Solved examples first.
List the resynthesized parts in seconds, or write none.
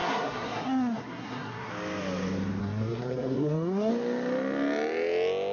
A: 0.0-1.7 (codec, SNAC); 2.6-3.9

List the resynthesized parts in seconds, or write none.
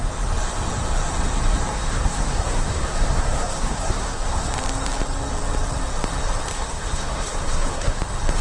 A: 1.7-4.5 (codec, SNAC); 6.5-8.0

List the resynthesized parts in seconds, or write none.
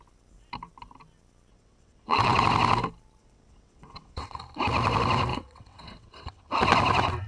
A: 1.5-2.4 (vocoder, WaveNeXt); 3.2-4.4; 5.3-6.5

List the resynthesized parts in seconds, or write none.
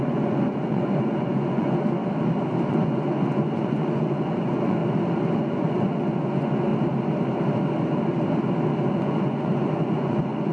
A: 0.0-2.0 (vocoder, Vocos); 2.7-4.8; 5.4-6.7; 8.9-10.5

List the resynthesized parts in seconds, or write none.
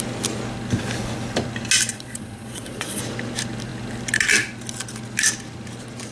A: 1.9-3.0 (vocoder, Vocos)